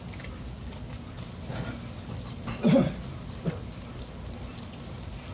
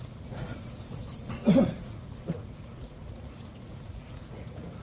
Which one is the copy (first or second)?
second